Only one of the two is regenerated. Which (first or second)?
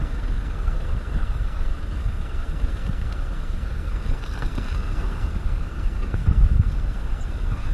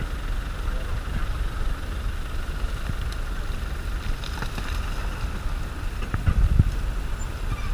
first